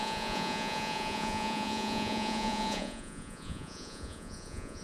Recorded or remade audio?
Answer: remade